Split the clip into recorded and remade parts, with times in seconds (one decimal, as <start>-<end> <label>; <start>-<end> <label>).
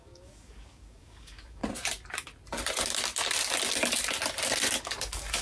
0.0-1.6 remade; 1.6-4.8 recorded; 4.8-5.4 remade